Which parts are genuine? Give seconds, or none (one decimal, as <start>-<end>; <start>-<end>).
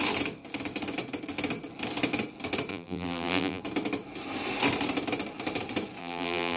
0.0-2.7; 3.6-6.0